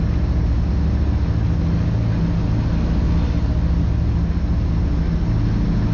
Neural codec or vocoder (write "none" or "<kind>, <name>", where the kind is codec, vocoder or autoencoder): none